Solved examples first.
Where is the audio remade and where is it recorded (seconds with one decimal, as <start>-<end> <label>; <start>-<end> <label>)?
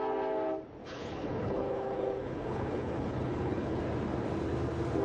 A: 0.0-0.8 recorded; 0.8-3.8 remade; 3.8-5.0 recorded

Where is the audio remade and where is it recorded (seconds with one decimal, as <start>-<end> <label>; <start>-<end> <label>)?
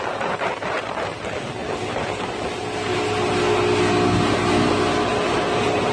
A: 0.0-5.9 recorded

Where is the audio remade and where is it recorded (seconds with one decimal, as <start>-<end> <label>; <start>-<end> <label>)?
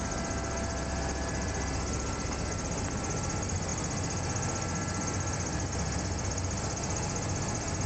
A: 0.0-7.9 recorded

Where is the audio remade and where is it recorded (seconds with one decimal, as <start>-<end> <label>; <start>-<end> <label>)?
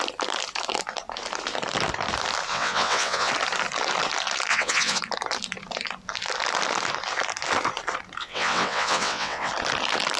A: 0.0-2.5 recorded; 2.5-3.3 remade; 3.3-4.5 recorded; 4.5-5.0 remade; 5.0-8.2 recorded; 8.2-9.5 remade; 9.5-10.2 recorded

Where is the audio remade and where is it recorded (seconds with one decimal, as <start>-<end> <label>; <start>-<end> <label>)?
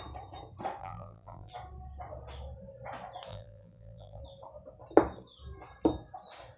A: 0.0-0.8 recorded; 0.8-1.5 remade; 1.5-3.3 recorded; 3.3-4.2 remade; 4.2-6.6 recorded